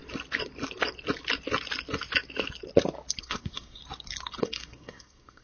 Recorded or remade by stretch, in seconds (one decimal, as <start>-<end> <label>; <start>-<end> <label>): 0.0-3.2 recorded; 3.2-3.8 remade; 3.8-4.4 recorded; 4.4-5.4 remade